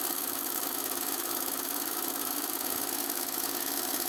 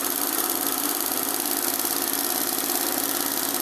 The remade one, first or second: first